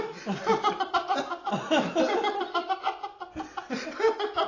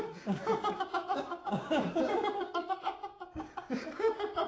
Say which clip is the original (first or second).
first